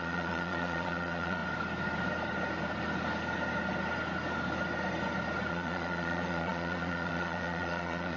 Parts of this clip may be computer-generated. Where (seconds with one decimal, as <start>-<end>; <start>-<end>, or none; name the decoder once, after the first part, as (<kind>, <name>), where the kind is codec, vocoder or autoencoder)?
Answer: 0.0-1.4 (vocoder, Vocos); 5.5-8.2